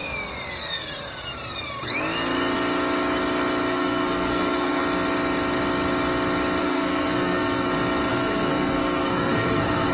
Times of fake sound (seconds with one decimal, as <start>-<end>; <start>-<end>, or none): 3.7-4.8; 6.6-7.7; 8.1-9.9